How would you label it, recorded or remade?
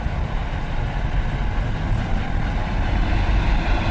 recorded